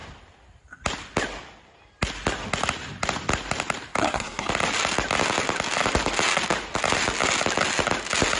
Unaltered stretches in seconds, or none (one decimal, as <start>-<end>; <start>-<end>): 0.0-4.0; 4.5-8.4